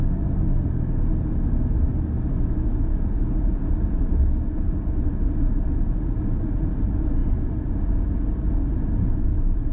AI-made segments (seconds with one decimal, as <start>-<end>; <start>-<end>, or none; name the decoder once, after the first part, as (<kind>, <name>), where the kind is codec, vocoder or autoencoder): 7.2-8.6 (vocoder, BigVGAN v2)